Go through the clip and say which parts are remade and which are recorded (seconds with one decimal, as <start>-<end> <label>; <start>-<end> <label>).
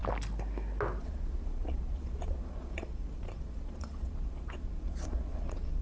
0.0-1.0 recorded; 1.0-5.8 remade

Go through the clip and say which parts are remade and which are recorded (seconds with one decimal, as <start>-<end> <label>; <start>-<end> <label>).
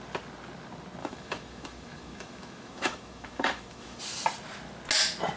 0.0-1.0 recorded; 1.0-4.0 remade; 4.0-5.4 recorded